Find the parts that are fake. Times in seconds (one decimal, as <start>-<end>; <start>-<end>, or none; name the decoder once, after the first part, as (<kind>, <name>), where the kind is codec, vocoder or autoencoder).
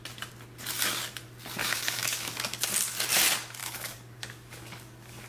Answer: 1.6-2.7 (codec, DAC); 3.6-5.3